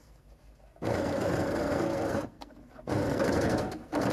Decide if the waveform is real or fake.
fake